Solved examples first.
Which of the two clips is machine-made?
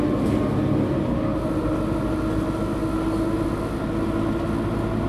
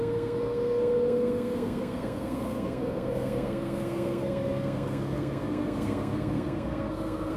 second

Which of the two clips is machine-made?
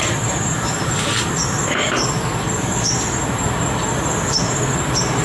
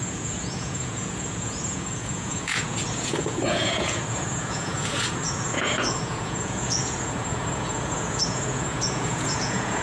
second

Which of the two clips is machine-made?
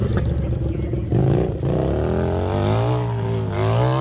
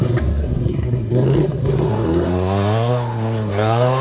second